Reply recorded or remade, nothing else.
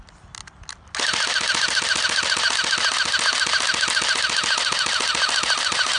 recorded